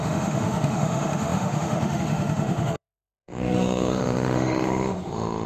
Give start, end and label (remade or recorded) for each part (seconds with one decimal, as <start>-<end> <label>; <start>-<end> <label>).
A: 0.0-5.5 remade